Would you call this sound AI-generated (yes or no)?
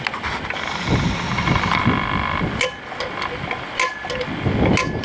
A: no